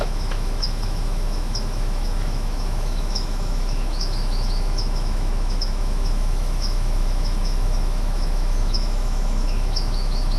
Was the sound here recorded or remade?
remade